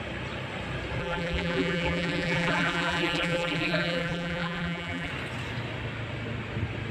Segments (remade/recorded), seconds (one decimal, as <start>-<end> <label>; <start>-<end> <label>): 0.0-1.0 recorded; 1.0-5.1 remade; 5.1-6.9 recorded